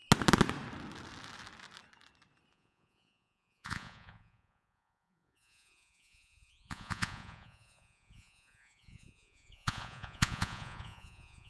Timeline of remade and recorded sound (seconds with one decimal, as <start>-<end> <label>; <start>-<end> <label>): 0.0-2.5 recorded; 2.5-11.5 remade

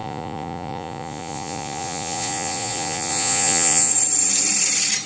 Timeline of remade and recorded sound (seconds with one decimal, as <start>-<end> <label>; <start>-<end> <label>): 0.0-3.9 remade; 3.9-5.1 recorded

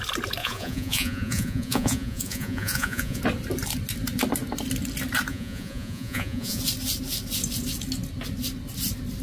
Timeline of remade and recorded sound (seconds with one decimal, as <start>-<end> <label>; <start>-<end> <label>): 0.0-0.4 recorded; 0.4-3.2 remade; 3.2-5.3 recorded; 5.3-6.6 remade; 6.6-9.2 recorded

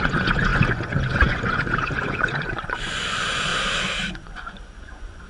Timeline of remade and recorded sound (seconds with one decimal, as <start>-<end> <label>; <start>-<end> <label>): 0.0-3.5 remade; 3.5-4.1 recorded; 4.1-5.3 remade

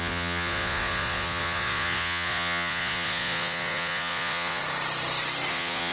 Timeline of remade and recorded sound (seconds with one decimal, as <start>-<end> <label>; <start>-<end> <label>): 0.0-4.6 remade; 4.6-5.5 recorded; 5.5-5.9 remade

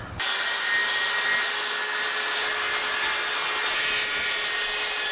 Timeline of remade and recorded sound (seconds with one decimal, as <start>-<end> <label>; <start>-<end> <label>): 0.0-5.1 recorded